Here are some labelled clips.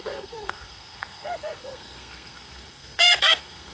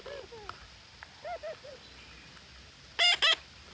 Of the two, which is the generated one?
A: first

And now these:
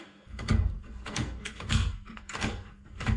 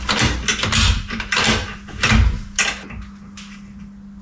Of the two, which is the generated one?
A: first